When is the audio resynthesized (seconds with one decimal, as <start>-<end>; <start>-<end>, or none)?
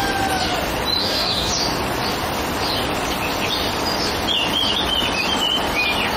1.0-1.5